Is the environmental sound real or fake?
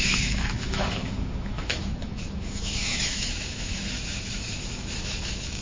fake